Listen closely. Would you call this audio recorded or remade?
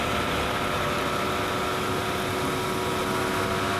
recorded